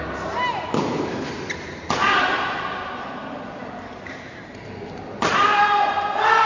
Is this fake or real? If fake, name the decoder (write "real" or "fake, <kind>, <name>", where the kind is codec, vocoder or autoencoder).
real